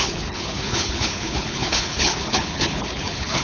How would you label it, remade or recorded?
remade